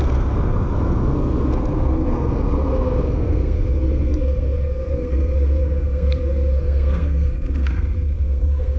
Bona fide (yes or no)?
no